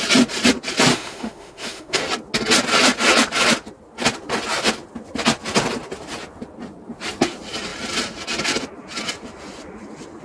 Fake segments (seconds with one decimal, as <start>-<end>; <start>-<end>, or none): 0.9-2.0